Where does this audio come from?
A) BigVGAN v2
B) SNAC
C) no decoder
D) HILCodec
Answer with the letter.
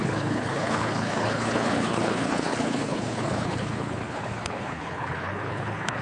D